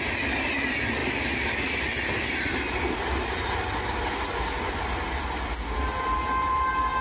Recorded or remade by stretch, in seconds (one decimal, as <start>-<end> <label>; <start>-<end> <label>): 0.0-7.0 recorded